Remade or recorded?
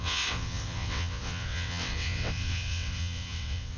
remade